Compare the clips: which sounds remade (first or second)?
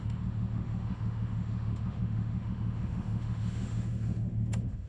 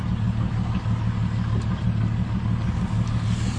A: first